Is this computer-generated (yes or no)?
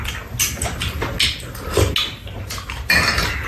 no